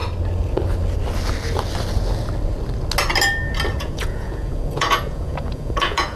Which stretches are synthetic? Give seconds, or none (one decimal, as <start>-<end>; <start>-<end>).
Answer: 3.7-6.2